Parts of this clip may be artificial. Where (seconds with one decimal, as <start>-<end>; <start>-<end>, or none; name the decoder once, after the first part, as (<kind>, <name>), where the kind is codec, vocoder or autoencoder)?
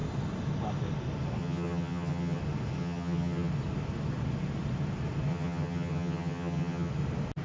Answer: 1.4-2.4 (vocoder, HiFi-GAN); 2.8-3.5; 5.3-6.9